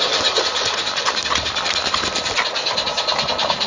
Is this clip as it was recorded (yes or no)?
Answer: yes